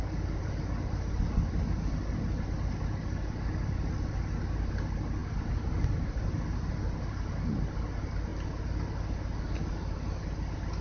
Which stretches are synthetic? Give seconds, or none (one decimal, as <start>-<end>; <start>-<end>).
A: none

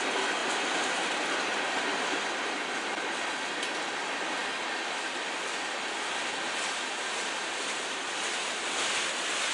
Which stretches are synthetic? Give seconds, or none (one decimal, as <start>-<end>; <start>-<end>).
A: 0.4-3.6

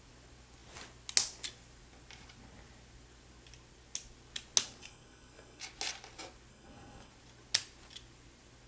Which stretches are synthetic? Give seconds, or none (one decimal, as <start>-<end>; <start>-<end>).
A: 4.8-5.6; 6.5-7.1